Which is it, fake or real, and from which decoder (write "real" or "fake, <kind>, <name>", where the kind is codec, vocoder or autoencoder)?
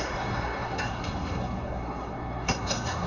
fake, codec, SNAC